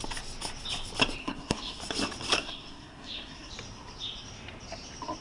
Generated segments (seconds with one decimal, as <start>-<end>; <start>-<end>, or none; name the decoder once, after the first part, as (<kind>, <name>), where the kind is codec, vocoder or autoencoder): 1.2-1.8 (codec, SNAC); 2.3-3.5